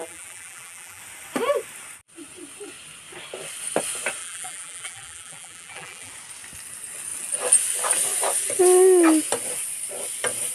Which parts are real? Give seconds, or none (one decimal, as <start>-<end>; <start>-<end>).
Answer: 1.0-4.2; 6.1-10.5